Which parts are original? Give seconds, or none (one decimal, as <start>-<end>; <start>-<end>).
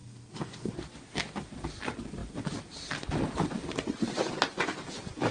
0.7-5.3